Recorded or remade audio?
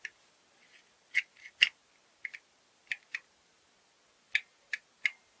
recorded